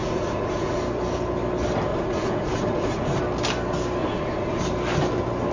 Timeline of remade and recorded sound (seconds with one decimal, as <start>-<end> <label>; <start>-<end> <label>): 0.0-0.8 remade; 0.8-1.9 recorded; 1.9-3.2 remade; 3.2-4.0 recorded; 4.0-4.6 remade; 4.6-5.5 recorded